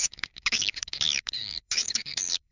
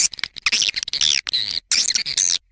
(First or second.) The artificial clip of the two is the first